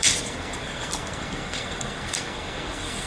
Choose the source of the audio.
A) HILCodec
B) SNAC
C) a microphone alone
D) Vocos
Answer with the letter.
B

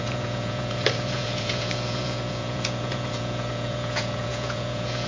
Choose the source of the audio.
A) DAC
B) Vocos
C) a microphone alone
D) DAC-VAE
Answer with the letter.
B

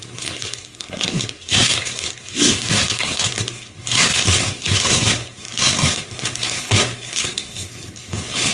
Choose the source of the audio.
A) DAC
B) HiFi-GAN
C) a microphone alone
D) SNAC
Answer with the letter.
D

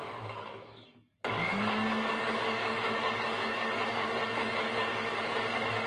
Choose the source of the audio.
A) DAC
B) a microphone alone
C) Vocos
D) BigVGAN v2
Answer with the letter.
A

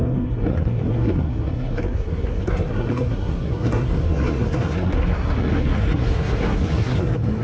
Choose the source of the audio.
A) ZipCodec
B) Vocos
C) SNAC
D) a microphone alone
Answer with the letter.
C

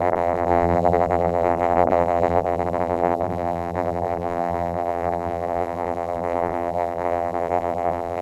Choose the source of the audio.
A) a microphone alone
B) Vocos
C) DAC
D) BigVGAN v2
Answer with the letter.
D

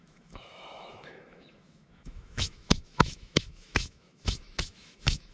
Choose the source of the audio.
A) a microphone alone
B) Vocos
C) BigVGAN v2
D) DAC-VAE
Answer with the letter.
D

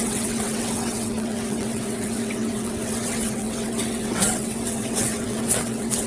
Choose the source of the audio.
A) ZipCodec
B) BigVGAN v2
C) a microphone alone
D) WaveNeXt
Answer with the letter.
D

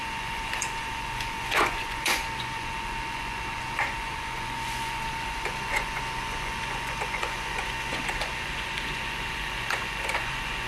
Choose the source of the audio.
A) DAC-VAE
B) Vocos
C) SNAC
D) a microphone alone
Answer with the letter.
B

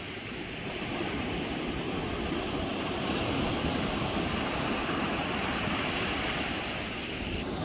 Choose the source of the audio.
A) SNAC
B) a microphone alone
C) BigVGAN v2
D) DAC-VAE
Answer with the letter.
C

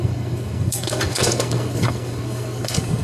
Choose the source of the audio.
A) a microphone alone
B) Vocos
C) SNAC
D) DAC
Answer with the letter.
C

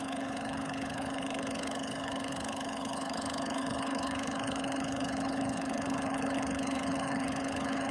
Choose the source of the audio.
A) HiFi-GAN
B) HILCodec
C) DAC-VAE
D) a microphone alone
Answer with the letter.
B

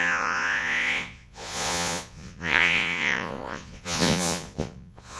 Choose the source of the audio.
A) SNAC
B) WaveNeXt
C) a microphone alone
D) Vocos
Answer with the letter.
D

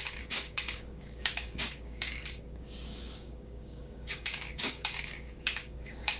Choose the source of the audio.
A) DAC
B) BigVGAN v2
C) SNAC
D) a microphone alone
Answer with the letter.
A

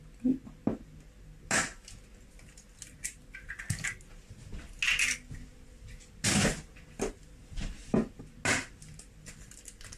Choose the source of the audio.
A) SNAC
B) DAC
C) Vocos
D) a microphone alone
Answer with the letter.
D